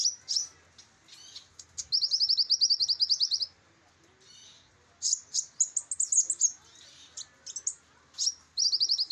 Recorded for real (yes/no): yes